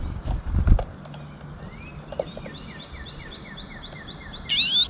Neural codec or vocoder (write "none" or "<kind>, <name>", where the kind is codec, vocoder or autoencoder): none